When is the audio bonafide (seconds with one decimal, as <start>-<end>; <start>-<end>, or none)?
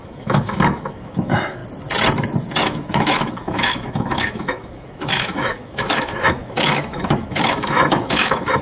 1.6-2.6